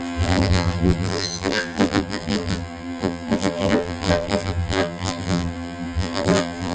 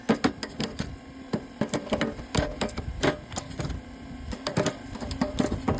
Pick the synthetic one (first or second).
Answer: first